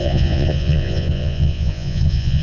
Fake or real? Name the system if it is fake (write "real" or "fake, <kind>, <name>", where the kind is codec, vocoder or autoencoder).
fake, vocoder, Vocos